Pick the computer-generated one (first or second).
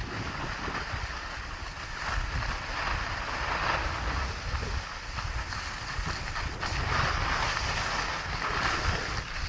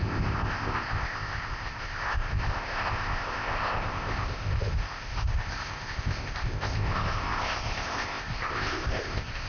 second